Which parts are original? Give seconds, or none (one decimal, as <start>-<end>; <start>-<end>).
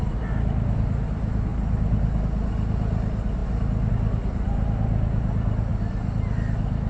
0.0-6.9